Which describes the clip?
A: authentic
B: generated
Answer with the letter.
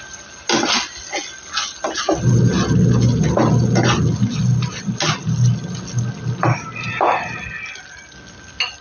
A